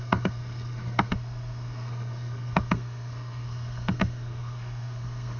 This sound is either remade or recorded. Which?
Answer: remade